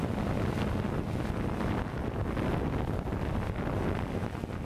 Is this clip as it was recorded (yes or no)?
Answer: yes